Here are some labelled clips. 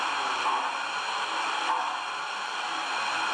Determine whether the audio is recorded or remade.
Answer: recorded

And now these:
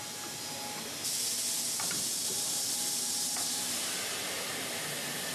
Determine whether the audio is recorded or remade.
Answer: recorded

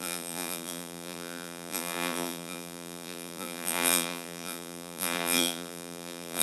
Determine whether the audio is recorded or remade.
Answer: remade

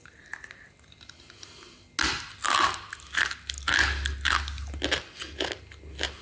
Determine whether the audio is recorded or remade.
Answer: recorded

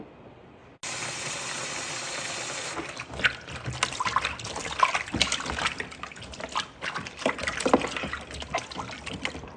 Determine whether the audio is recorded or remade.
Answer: recorded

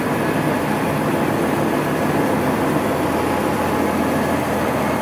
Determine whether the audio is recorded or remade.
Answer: recorded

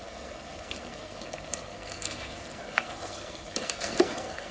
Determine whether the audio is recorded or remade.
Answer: remade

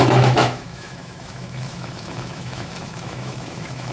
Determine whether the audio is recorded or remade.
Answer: remade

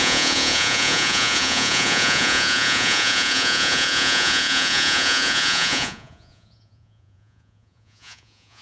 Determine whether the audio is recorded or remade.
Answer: remade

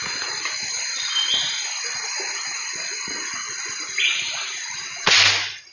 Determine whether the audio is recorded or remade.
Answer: recorded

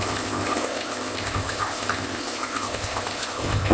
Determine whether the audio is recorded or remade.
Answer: remade